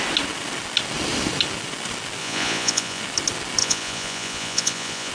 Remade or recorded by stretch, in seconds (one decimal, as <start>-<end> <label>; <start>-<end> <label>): 0.0-2.2 recorded; 2.2-3.0 remade; 3.0-3.6 recorded; 3.6-5.1 remade